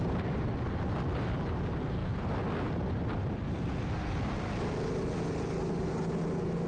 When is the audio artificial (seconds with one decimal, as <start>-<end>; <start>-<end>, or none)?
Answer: none